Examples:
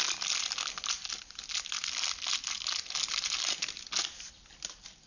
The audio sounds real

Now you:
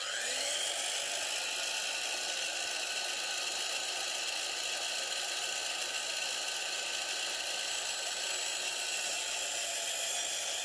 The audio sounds real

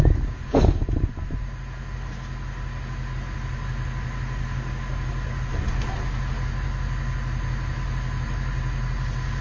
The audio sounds real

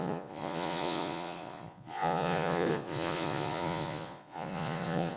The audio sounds fake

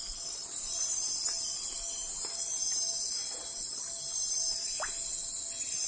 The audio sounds real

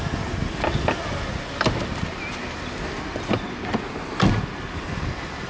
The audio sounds real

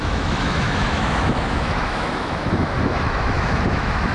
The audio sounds fake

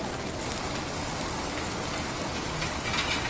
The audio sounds real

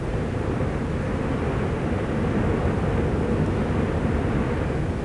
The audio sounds real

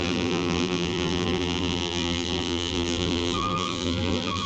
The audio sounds fake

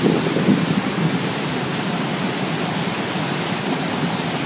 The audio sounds real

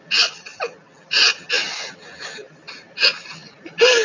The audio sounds real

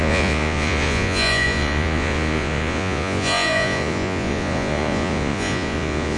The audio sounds fake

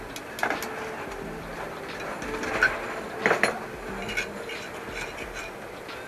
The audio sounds real